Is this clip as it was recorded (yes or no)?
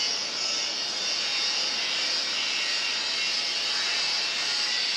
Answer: yes